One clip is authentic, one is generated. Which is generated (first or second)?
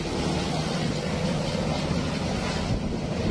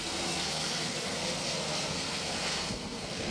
second